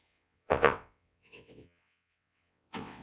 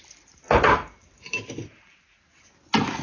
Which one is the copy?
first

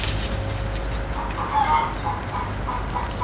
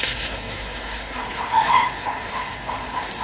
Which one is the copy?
second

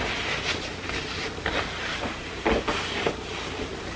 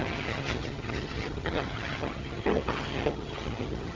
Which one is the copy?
second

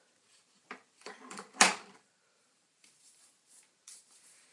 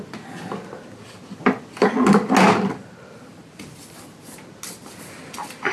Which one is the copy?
first